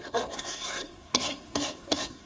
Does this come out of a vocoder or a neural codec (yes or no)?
yes